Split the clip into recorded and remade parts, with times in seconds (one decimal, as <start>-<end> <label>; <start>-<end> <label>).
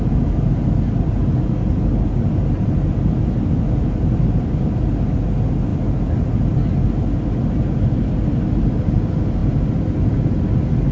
0.0-10.9 recorded